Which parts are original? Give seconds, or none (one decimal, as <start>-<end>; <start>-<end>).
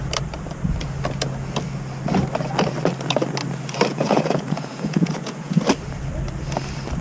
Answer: 0.0-3.9; 5.6-7.0